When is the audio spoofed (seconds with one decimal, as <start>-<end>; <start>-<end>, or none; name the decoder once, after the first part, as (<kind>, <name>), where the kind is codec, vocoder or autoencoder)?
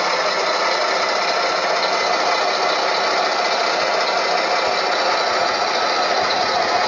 0.0-0.8 (vocoder, Vocos); 4.9-6.9